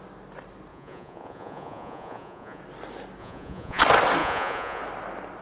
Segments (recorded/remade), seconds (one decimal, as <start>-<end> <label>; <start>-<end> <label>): 0.0-0.7 recorded; 0.7-2.6 remade; 2.6-3.2 recorded; 3.2-3.8 remade; 3.8-4.2 recorded; 4.2-4.8 remade; 4.8-5.4 recorded